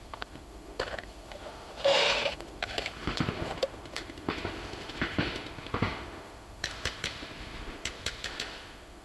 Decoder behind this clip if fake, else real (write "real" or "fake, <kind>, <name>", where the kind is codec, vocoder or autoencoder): fake, autoencoder, DAC-VAE